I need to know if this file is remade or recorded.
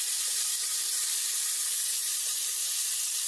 remade